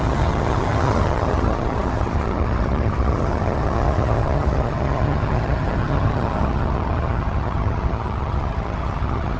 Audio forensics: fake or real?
fake